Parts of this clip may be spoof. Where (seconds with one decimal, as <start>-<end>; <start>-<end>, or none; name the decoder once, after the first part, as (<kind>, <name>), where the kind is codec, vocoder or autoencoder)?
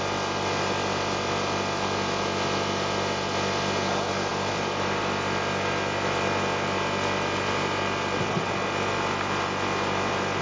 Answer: 4.3-5.0 (vocoder, BigVGAN v2)